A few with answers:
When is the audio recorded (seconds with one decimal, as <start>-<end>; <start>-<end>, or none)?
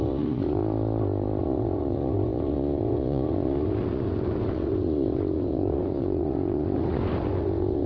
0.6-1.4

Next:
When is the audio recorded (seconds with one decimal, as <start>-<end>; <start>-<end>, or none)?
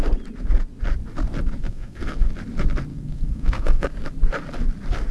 0.0-1.6; 2.3-2.9; 3.9-5.1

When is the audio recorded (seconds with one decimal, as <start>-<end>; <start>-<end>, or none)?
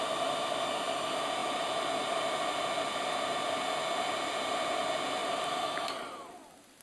0.0-5.2; 6.3-6.8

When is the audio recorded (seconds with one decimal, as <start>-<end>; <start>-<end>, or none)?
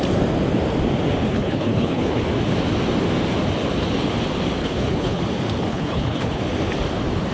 0.0-1.2; 2.2-4.6; 5.2-5.7; 6.4-7.3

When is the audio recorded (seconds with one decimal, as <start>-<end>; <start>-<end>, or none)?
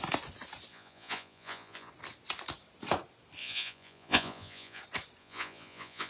0.0-0.7; 1.9-3.4; 4.8-5.2